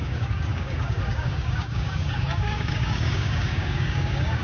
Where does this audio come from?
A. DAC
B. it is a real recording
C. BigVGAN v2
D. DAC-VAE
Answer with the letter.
A